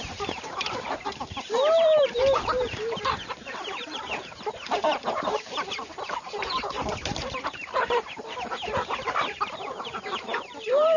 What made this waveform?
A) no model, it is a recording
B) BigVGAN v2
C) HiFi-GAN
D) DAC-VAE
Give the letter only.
B